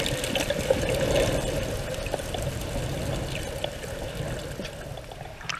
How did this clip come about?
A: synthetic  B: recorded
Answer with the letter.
B